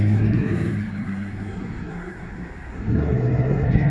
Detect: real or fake fake